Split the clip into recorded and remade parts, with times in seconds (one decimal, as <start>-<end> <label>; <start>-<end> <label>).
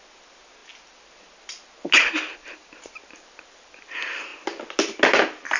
0.0-5.6 recorded